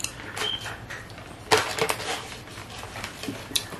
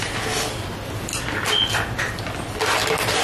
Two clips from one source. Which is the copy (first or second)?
first